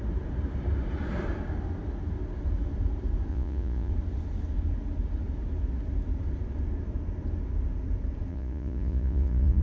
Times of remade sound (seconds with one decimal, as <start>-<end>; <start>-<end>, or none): 3.3-3.9; 8.3-9.6